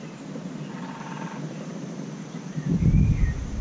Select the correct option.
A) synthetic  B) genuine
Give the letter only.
B